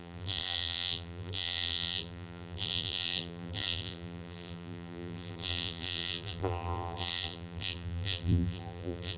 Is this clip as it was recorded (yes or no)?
no